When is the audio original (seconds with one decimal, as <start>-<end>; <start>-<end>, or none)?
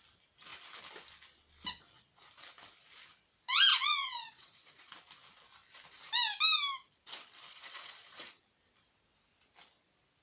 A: 0.0-3.7; 4.9-7.5; 8.4-10.2